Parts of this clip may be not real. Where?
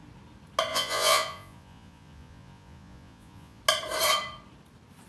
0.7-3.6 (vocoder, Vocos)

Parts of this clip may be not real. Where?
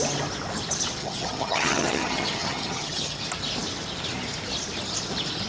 1.0-3.2 (vocoder, HiFi-GAN)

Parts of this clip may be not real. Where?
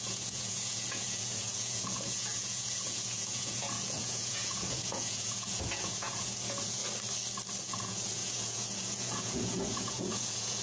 0.0-6.8 (vocoder, Vocos); 7.6-10.6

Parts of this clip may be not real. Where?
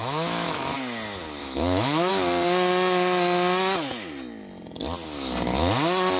0.0-0.7 (autoencoder, DAC-VAE); 1.4-2.1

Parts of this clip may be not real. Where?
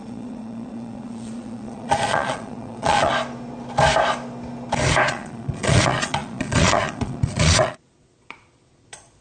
0.0-3.1 (vocoder, Vocos); 5.1-9.2